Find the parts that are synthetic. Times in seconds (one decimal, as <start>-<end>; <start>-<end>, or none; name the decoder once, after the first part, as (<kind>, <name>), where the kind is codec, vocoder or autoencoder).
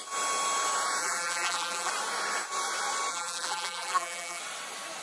1.0-1.9 (vocoder, BigVGAN v2); 3.1-4.4